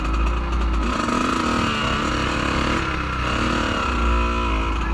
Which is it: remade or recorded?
recorded